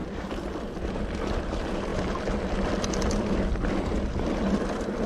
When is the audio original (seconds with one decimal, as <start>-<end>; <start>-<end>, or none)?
0.0-5.1